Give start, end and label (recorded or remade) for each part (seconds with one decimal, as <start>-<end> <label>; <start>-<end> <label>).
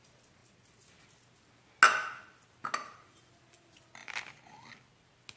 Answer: 0.0-5.4 recorded